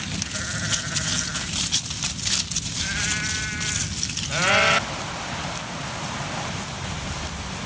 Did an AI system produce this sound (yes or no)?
no